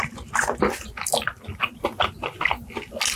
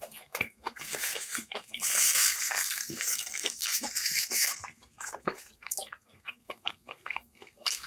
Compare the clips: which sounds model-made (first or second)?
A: second